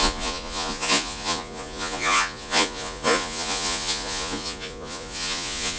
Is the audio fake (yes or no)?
yes